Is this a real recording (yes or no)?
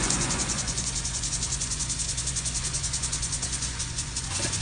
no